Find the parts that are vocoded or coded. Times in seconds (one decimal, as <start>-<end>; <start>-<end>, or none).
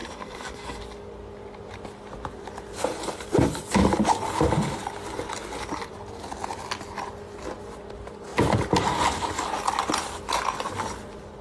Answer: 0.0-0.8